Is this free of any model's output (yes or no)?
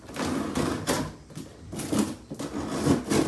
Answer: yes